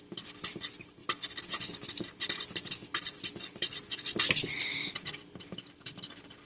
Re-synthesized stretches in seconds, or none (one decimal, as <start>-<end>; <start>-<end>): none

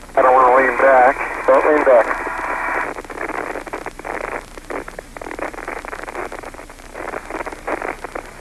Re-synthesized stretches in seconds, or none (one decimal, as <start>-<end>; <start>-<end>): none